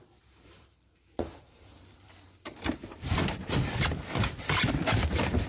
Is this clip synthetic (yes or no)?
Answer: yes